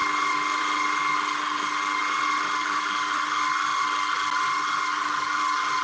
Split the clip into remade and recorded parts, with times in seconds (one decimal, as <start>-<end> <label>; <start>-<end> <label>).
0.0-5.8 recorded